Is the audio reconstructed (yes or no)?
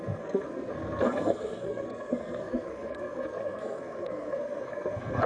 yes